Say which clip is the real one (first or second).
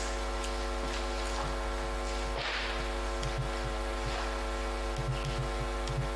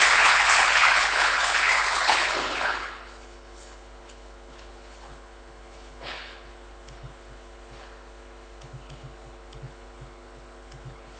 first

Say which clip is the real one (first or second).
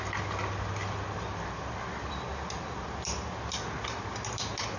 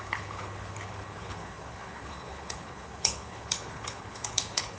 first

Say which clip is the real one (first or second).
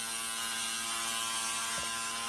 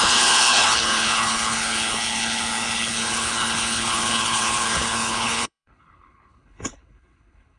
first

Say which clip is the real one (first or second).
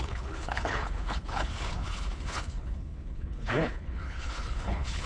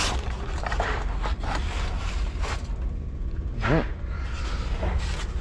second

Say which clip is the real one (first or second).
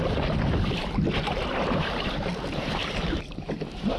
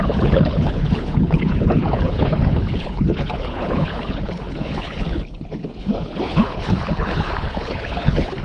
first